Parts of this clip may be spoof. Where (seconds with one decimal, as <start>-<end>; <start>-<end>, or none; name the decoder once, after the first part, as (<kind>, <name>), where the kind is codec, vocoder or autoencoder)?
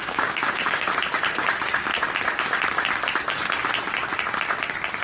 0.0-0.9 (codec, DAC)